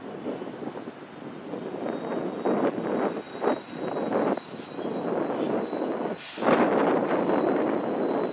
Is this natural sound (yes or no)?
yes